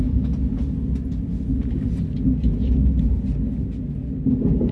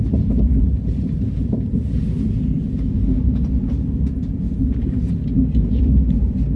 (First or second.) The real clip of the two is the first